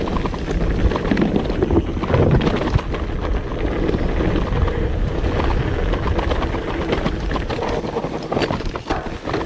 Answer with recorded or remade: recorded